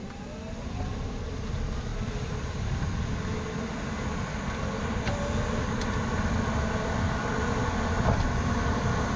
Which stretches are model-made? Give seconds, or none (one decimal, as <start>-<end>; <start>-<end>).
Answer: none